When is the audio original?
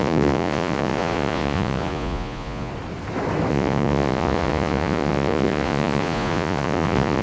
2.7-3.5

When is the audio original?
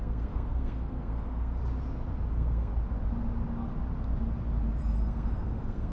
1.6-2.3; 2.7-4.8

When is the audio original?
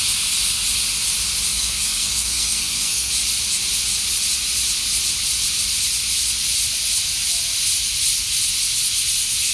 0.0-1.5; 3.1-9.5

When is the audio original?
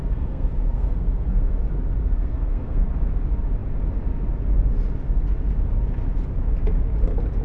1.7-2.2; 2.9-7.4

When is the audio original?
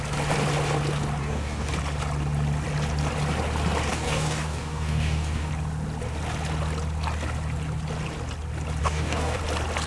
0.0-1.2; 1.7-3.9; 5.5-8.8; 9.4-9.9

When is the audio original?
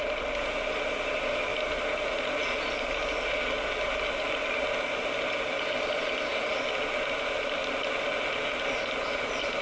0.0-9.6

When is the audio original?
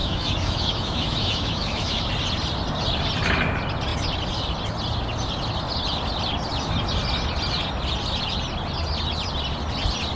2.1-10.2